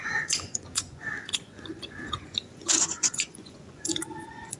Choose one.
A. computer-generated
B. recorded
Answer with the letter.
A